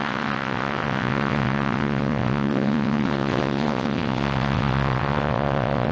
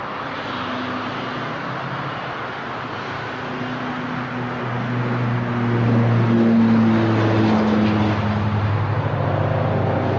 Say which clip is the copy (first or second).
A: first